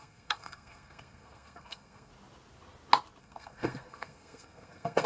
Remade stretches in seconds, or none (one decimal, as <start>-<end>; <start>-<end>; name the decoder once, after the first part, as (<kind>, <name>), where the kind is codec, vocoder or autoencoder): 0.0-2.1 (codec, SNAC); 3.2-5.1